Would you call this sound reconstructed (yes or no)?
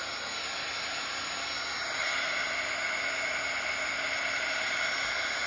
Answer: no